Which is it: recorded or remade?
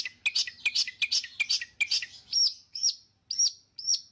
recorded